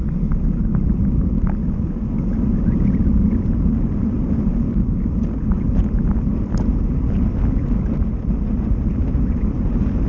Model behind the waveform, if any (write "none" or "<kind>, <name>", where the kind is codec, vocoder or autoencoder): none